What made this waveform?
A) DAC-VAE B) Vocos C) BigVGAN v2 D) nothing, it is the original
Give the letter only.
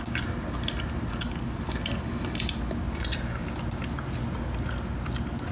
D